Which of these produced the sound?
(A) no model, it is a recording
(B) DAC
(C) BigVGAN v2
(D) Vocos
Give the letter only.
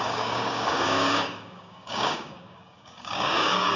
B